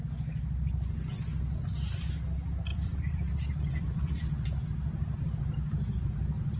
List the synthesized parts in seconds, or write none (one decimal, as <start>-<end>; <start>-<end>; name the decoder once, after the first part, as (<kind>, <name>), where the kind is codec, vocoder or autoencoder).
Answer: 2.7-4.1 (vocoder, BigVGAN v2)